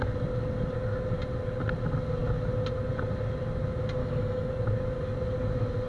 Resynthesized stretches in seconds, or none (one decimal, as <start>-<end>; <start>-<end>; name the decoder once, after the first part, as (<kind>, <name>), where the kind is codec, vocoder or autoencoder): 4.0-4.5 (autoencoder, DAC-VAE)